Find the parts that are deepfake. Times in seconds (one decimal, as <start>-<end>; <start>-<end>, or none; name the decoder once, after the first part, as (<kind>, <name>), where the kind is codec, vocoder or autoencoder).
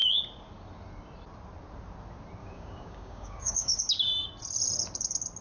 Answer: 2.4-3.8 (codec, DAC)